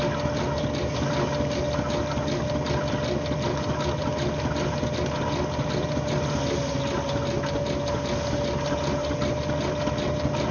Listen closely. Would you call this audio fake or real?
real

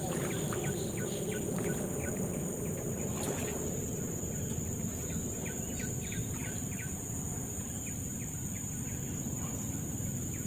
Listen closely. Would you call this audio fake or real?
fake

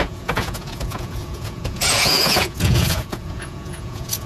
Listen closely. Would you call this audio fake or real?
fake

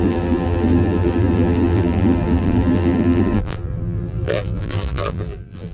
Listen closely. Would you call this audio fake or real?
fake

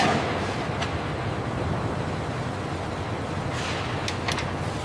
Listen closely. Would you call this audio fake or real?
real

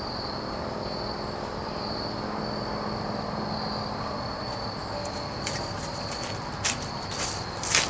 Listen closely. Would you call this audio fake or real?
real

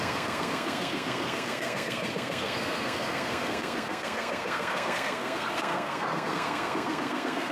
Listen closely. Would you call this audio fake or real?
fake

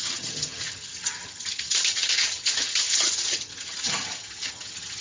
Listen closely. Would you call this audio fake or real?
fake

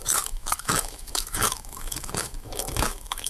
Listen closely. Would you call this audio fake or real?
fake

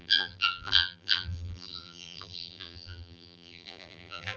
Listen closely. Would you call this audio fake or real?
fake